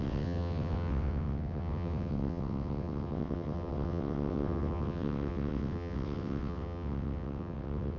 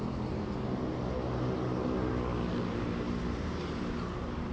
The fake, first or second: first